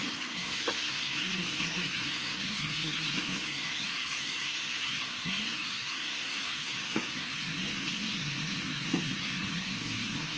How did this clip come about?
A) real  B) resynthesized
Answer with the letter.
B